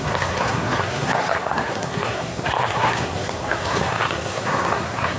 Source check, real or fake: fake